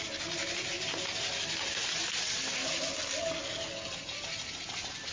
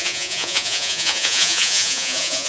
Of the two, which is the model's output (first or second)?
second